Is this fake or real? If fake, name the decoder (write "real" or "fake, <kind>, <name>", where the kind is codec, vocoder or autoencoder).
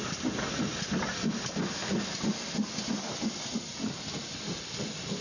real